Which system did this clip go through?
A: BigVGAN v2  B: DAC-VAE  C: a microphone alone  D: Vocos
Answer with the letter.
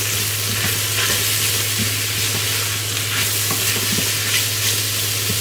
C